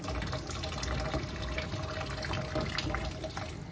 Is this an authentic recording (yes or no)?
yes